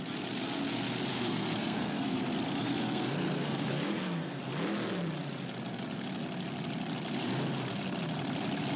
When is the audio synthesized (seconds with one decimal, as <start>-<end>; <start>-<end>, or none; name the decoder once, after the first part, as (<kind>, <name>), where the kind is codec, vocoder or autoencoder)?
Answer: 1.1-2.2 (codec, SNAC); 2.7-4.5